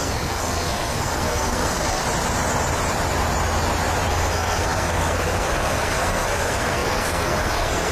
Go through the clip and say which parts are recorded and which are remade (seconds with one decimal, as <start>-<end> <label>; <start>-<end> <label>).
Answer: 0.0-2.0 remade; 2.0-4.1 recorded; 4.1-7.9 remade